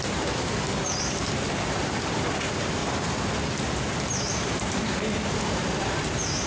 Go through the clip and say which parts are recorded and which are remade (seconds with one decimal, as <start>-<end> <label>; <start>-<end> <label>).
0.0-0.8 remade; 0.8-1.5 recorded; 1.5-2.8 remade; 2.8-3.9 recorded; 3.9-6.5 remade